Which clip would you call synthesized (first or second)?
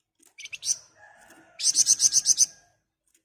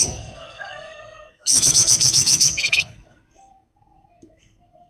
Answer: second